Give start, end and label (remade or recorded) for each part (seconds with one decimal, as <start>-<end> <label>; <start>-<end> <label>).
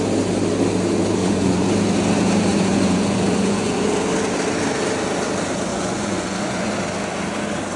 0.0-1.2 recorded; 1.2-1.7 remade; 1.7-2.5 recorded; 2.5-3.9 remade; 3.9-5.7 recorded; 5.7-6.7 remade; 6.7-7.8 recorded